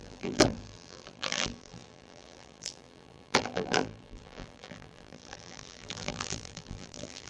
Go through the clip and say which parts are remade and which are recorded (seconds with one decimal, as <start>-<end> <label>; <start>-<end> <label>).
0.0-7.3 remade